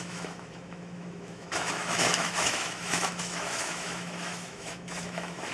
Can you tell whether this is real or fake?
fake